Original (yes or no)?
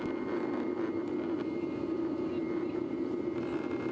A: yes